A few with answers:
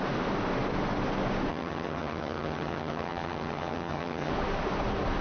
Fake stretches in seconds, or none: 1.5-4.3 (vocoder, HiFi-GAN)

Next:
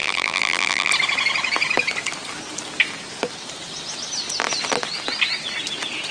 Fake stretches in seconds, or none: 0.0-0.9 (vocoder, BigVGAN v2)

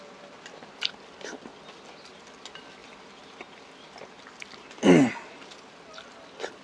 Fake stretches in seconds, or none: none

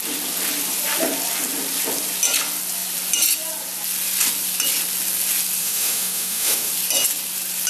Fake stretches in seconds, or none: 5.6-6.7 (autoencoder, DAC-VAE)

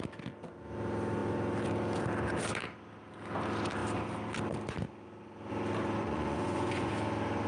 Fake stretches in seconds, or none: 6.0-6.9 (vocoder, Vocos)

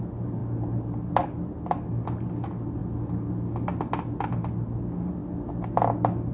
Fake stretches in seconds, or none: none

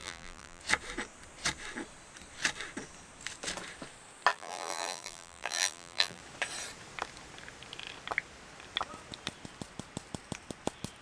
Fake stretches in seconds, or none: 0.0-0.6 (vocoder, BigVGAN v2); 4.3-6.2

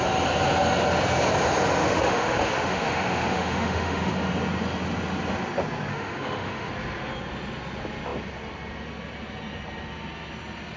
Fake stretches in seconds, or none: 1.8-4.1 (autoencoder, DAC-VAE); 5.9-6.7